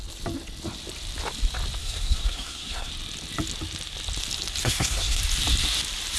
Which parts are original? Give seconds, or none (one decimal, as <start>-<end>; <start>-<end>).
0.0-1.8; 2.9-4.6; 5.2-6.2